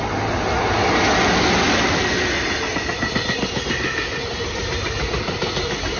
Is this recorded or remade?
recorded